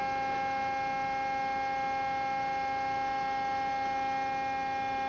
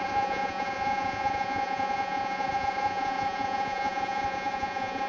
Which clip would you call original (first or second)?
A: first